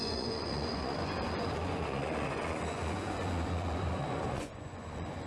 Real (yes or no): no